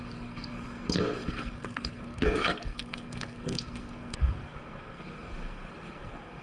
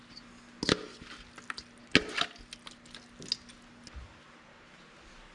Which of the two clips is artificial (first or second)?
first